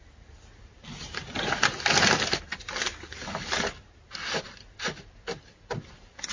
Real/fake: real